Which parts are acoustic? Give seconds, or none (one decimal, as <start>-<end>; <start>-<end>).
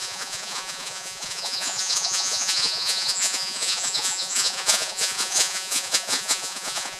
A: none